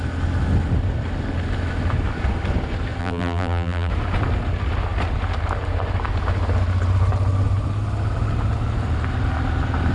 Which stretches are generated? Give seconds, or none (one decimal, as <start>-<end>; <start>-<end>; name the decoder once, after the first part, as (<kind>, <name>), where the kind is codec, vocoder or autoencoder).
3.0-3.9 (vocoder, BigVGAN v2)